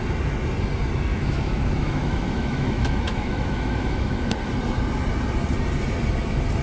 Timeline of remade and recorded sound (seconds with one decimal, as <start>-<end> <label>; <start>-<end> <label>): 0.0-1.1 recorded; 1.1-4.2 remade; 4.2-6.6 recorded

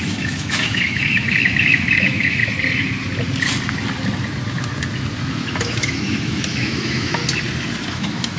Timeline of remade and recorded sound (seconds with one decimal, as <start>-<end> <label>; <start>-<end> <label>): 0.0-2.4 remade; 2.4-5.6 recorded; 5.6-7.2 remade; 7.2-7.9 recorded; 7.9-8.4 remade